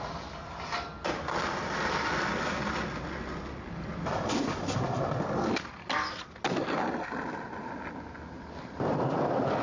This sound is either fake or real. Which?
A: real